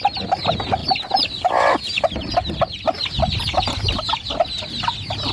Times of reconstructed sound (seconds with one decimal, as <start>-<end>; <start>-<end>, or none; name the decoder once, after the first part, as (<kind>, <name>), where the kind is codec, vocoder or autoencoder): 0.8-4.0 (vocoder, BigVGAN v2)